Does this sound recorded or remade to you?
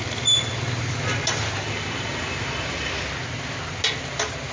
recorded